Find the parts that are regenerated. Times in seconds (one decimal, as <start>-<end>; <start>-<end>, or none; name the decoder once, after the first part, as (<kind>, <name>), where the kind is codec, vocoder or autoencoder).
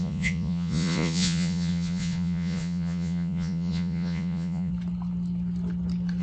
0.0-4.7 (vocoder, Vocos)